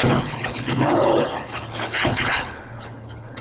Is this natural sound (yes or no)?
no